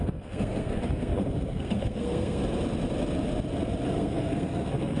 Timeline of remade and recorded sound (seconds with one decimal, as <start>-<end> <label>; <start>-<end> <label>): 0.0-2.4 remade; 2.4-3.9 recorded; 3.9-5.0 remade